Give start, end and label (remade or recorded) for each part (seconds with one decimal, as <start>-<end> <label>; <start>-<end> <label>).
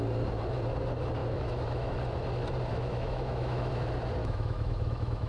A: 0.0-1.2 recorded; 1.2-1.9 remade; 1.9-2.7 recorded; 2.7-3.7 remade; 3.7-4.2 recorded; 4.2-5.3 remade